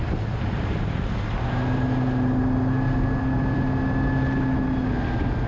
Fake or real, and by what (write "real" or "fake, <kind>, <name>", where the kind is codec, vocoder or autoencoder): real